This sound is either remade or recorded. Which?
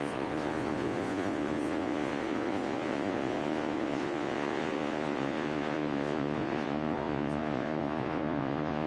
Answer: remade